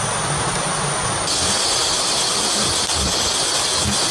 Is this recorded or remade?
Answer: recorded